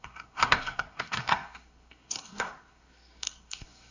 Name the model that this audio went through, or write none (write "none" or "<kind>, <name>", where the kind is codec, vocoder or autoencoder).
codec, SNAC